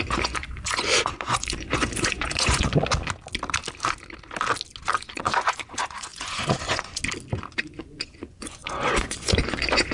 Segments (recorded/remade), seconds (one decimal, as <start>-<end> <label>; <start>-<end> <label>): 0.0-2.7 remade; 2.7-4.9 recorded; 4.9-7.0 remade; 7.0-7.6 recorded; 7.6-9.9 remade